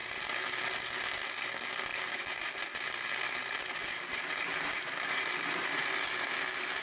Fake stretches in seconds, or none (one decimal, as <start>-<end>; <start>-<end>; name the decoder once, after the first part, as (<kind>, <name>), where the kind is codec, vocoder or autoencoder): 1.9-6.0 (vocoder, BigVGAN v2)